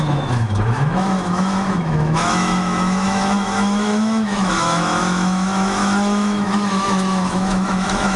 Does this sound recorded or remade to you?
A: remade